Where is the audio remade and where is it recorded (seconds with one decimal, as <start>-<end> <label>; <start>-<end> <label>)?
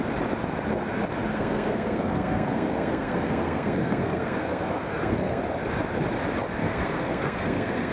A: 0.0-1.3 recorded; 1.3-5.4 remade; 5.4-6.6 recorded; 6.6-7.9 remade